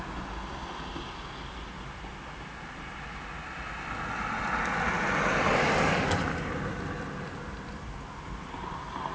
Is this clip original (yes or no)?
yes